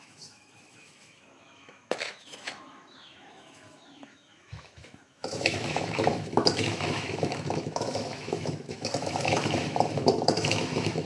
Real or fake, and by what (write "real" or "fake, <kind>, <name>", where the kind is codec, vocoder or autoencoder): fake, autoencoder, DAC-VAE